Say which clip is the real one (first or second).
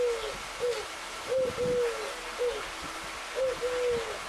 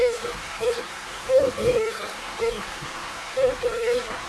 first